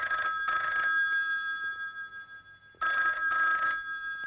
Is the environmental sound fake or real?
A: real